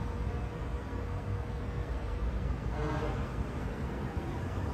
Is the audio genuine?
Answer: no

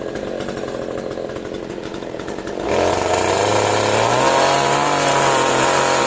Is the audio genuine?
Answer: yes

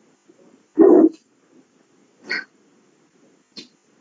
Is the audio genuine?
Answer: yes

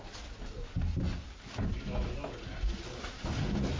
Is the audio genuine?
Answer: yes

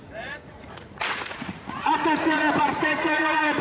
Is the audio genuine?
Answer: no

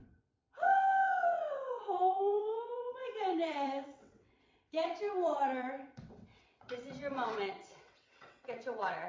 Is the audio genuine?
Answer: no